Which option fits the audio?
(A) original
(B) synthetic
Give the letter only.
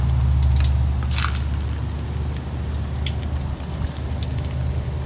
A